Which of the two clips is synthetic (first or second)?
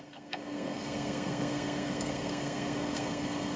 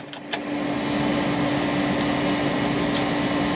first